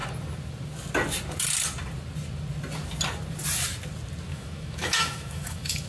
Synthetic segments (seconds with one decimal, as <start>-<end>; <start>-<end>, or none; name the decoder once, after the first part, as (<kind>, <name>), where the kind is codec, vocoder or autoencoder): 4.3-5.9 (autoencoder, DAC-VAE)